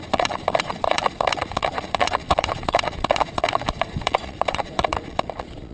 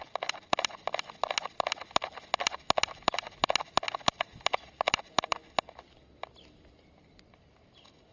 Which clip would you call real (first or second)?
second